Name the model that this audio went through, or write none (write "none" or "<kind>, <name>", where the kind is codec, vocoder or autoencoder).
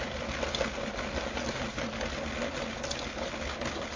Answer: none